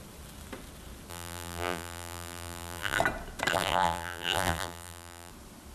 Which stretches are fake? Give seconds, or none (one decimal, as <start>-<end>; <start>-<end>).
1.1-3.0; 3.5-5.3